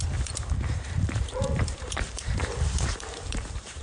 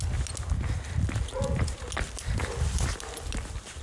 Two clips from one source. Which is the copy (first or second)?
first